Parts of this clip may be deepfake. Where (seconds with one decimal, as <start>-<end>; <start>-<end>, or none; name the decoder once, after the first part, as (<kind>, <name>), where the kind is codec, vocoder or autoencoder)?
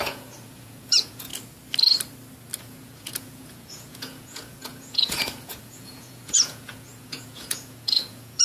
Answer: 0.0-1.3 (vocoder, Vocos); 2.6-8.4